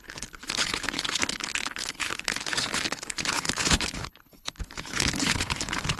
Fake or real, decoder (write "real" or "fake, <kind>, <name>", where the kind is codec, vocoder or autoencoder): fake, codec, HILCodec